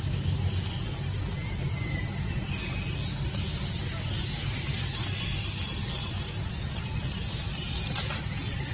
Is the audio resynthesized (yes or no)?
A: no